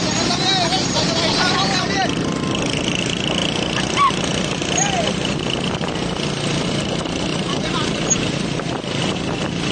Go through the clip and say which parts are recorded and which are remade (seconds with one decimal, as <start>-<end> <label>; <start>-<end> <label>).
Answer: 0.0-3.4 recorded; 3.4-4.1 remade; 4.1-4.6 recorded; 4.6-5.8 remade; 5.8-7.3 recorded; 7.3-9.7 remade